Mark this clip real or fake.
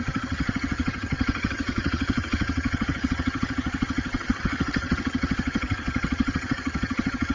fake